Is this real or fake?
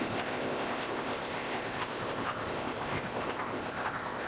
fake